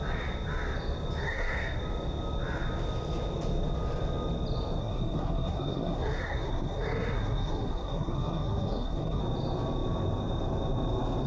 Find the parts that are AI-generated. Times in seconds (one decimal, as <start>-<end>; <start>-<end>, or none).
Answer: 1.2-1.8; 4.8-9.2